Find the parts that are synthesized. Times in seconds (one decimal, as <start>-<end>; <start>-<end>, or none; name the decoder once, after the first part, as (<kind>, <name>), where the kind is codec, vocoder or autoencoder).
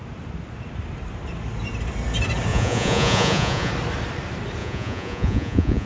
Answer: 2.5-3.7 (vocoder, Vocos); 4.6-5.9